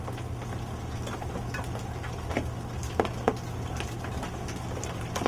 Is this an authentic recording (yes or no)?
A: yes